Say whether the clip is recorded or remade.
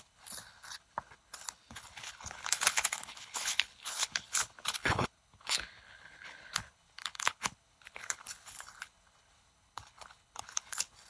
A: remade